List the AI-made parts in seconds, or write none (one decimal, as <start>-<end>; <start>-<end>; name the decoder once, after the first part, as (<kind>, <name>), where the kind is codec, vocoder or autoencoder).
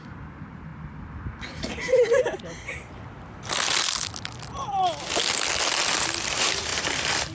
none